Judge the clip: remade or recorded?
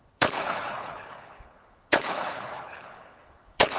remade